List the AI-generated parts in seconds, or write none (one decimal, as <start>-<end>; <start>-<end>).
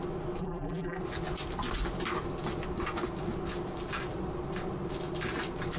0.4-1.0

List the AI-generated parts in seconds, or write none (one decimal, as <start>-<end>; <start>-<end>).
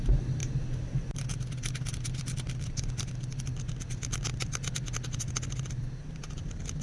none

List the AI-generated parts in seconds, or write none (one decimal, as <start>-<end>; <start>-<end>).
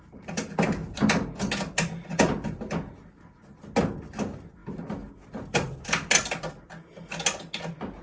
none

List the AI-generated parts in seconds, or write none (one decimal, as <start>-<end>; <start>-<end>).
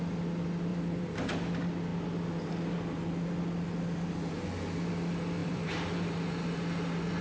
0.7-1.5; 5.4-6.1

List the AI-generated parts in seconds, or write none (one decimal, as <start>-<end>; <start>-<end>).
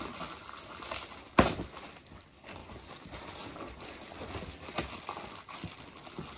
none